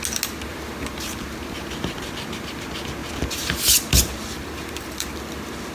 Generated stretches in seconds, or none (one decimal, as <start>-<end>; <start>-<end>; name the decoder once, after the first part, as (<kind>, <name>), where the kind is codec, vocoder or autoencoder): 0.5-2.5 (vocoder, BigVGAN v2); 3.0-5.1